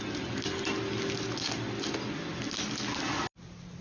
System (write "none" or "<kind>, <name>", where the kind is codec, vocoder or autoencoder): none